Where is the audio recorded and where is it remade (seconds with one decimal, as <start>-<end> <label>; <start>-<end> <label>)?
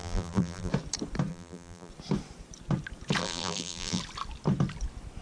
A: 0.0-0.7 remade; 0.7-1.3 recorded; 1.3-1.9 remade; 1.9-3.2 recorded; 3.2-4.0 remade; 4.0-5.2 recorded